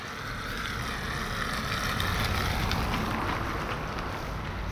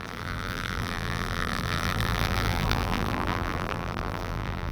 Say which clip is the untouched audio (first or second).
first